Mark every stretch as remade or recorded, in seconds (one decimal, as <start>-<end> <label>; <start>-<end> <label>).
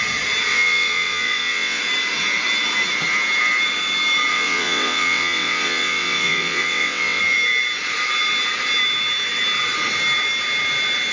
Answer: 0.0-0.5 recorded; 0.5-1.8 remade; 1.8-4.3 recorded; 4.3-7.2 remade; 7.2-11.1 recorded